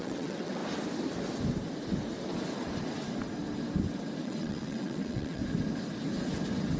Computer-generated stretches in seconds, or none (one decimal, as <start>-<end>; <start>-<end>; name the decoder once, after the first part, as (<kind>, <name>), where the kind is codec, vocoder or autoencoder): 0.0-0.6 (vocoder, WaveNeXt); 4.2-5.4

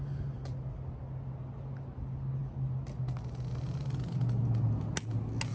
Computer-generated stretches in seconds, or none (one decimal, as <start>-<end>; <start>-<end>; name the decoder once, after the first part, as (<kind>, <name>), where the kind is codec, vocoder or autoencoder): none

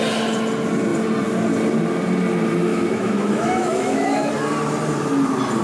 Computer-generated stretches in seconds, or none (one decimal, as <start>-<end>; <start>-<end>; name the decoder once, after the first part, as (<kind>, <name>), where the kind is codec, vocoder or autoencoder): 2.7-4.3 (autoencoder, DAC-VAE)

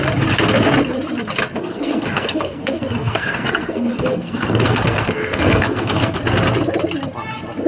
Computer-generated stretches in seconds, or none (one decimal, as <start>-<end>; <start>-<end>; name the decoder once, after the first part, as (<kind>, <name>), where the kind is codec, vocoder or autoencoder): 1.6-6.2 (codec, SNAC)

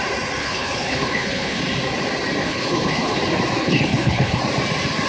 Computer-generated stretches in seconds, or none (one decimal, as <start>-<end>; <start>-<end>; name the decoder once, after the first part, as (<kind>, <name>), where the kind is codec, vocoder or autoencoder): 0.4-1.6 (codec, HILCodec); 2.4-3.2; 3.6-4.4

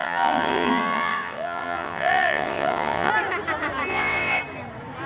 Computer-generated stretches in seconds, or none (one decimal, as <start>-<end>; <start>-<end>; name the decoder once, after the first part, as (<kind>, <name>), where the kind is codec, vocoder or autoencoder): 0.0-3.1 (vocoder, WaveNeXt); 3.9-4.4

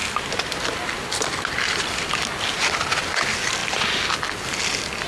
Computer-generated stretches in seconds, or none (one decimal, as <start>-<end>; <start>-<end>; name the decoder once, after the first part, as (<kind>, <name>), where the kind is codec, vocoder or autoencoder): none

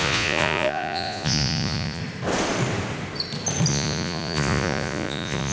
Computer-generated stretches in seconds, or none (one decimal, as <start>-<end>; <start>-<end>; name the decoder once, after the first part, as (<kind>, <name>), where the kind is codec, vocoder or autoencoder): 0.0-2.0 (vocoder, Vocos); 3.7-5.5